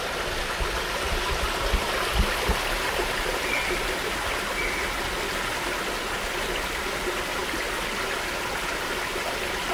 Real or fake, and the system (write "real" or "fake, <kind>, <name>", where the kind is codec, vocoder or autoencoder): real